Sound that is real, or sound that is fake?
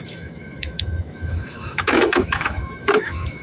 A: fake